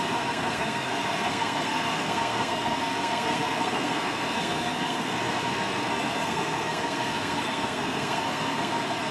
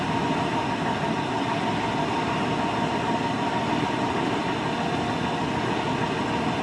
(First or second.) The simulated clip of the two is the first